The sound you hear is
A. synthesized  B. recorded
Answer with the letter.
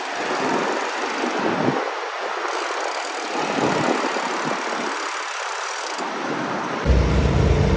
B